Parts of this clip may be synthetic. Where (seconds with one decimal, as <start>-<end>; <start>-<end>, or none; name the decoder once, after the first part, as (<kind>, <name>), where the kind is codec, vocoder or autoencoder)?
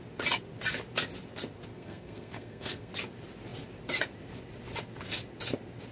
1.7-2.9 (codec, SNAC)